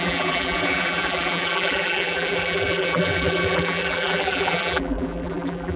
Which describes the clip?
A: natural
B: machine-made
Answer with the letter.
B